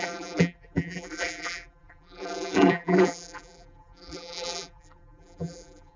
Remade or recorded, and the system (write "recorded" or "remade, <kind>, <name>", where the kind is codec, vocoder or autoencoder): remade, vocoder, BigVGAN v2